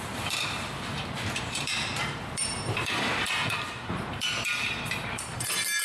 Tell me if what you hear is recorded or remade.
remade